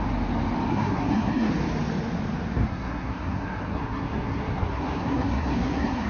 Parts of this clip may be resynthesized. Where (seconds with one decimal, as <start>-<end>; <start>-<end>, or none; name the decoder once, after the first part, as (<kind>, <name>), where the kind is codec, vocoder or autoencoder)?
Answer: 0.7-1.5 (codec, SNAC); 2.6-6.1